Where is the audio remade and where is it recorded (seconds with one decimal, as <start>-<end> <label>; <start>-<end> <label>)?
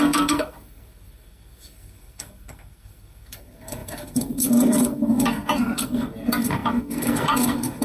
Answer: 0.0-7.8 remade